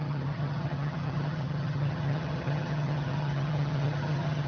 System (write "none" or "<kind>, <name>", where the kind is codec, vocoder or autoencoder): vocoder, HiFi-GAN